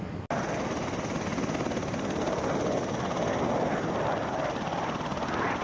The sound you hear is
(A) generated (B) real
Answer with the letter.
B